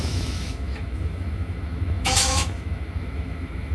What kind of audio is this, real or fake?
fake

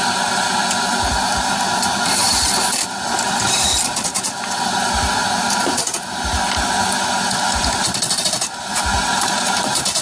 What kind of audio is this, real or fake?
fake